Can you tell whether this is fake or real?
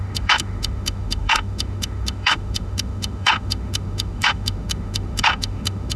fake